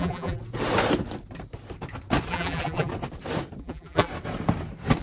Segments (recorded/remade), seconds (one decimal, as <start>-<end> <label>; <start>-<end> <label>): 0.0-0.4 remade; 0.4-2.3 recorded; 2.3-2.9 remade; 2.9-3.6 recorded; 3.6-4.1 remade; 4.1-5.0 recorded